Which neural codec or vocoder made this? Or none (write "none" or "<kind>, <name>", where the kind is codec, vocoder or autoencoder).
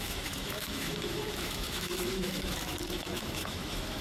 autoencoder, DAC-VAE